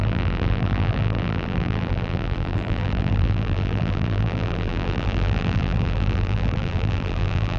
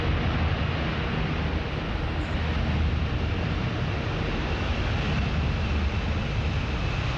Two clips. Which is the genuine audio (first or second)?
second